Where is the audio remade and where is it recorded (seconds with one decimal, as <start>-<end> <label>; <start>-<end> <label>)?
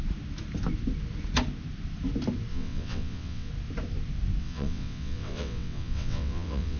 0.0-2.5 recorded; 2.5-3.5 remade; 3.5-4.4 recorded; 4.4-6.8 remade